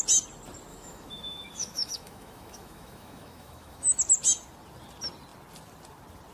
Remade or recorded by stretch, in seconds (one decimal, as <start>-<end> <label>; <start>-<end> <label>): 0.0-0.7 recorded; 0.7-4.0 remade; 4.0-6.3 recorded